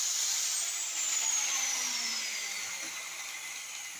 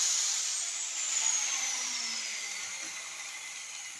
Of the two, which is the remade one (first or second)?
second